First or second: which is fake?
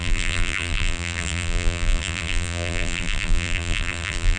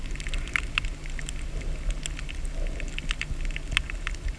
first